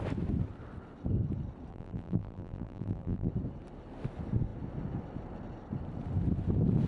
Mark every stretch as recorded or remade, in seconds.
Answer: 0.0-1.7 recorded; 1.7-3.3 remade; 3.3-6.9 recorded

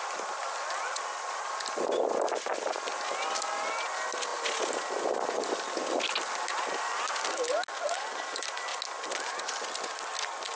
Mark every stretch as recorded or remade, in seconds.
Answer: 0.0-10.6 recorded

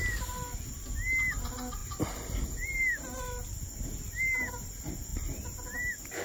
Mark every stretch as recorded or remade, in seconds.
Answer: 0.0-6.2 recorded

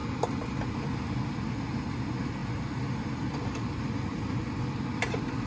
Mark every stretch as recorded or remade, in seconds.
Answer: 0.0-5.5 recorded

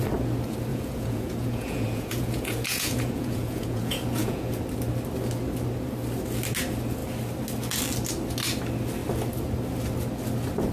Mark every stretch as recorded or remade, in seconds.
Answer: 0.0-0.7 recorded; 0.7-4.6 remade; 4.6-10.7 recorded